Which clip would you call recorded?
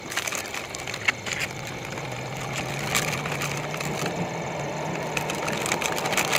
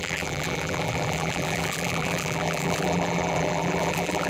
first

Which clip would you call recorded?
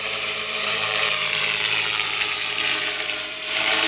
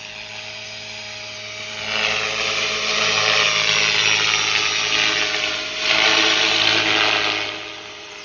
second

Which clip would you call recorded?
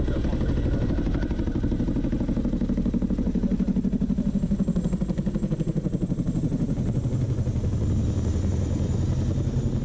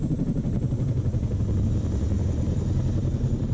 first